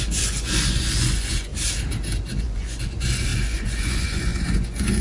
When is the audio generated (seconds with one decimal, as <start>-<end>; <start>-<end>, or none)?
0.0-1.5; 2.4-5.0